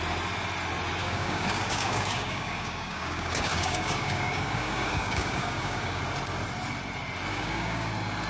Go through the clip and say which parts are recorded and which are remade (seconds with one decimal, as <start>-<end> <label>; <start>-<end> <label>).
0.0-1.0 recorded; 1.0-6.0 remade; 6.0-7.3 recorded; 7.3-7.9 remade; 7.9-8.3 recorded